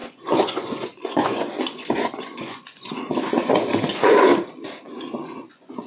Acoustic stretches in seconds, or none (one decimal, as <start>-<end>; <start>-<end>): 4.3-4.8